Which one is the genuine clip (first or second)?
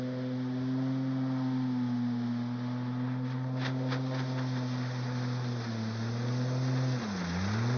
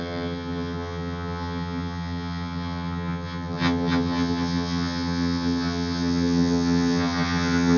first